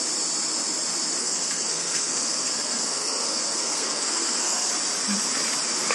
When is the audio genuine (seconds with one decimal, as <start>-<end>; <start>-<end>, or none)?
0.0-1.2; 4.7-5.9

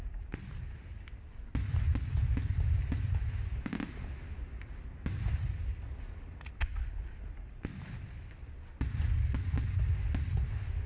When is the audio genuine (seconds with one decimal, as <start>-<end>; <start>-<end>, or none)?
0.0-10.9

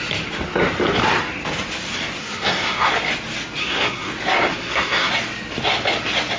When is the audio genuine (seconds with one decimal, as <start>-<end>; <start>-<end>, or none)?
0.0-2.2; 2.9-3.6; 4.1-4.5; 5.1-6.4